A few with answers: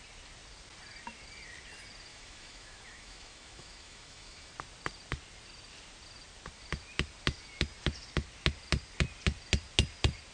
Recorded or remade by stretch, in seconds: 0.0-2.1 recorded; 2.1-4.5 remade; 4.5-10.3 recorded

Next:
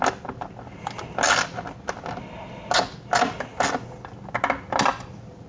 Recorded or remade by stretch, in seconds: 0.0-5.5 recorded

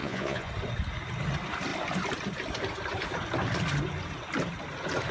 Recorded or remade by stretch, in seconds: 0.0-0.5 remade; 0.5-5.1 recorded

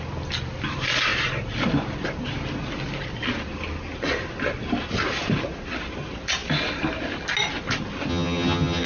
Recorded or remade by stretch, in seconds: 0.0-8.1 recorded; 8.1-8.9 remade

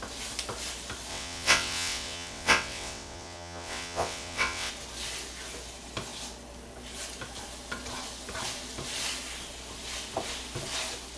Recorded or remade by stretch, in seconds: 0.0-1.1 recorded; 1.1-4.7 remade; 4.7-11.2 recorded

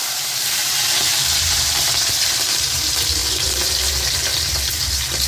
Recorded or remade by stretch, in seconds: 0.0-2.1 remade; 2.1-5.3 recorded

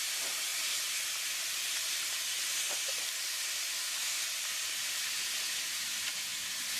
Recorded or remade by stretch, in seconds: 0.0-6.8 recorded

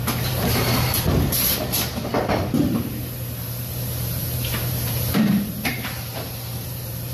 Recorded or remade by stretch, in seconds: 0.0-7.1 remade